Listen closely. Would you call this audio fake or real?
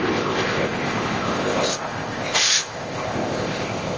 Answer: fake